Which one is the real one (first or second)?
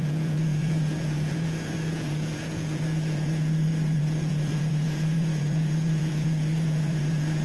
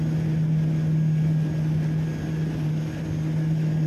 second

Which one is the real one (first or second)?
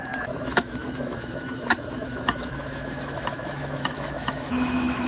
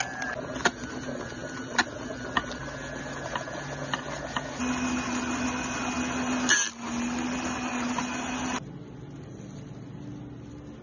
second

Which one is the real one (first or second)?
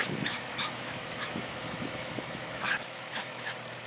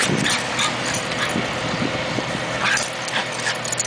second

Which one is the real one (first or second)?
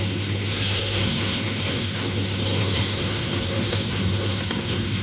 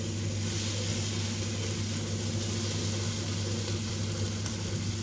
second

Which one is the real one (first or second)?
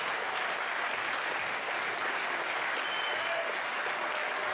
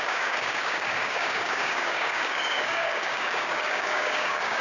first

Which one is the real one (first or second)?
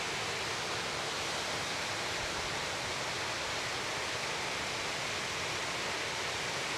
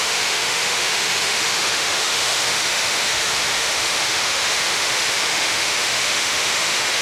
first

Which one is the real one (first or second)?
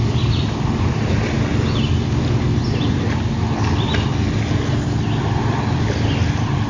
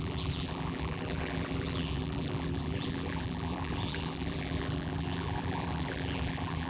first